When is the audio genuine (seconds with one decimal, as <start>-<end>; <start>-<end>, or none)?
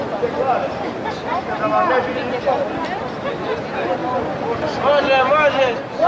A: 0.0-6.1